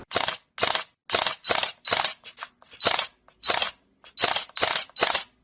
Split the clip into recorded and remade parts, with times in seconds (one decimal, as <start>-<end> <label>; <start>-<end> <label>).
0.0-5.4 recorded